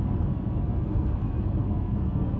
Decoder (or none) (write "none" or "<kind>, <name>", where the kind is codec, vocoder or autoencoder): codec, SNAC